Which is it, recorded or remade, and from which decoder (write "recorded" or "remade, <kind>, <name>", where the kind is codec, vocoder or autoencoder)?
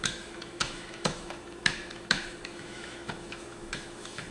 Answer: remade, autoencoder, DAC-VAE